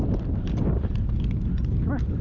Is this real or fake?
real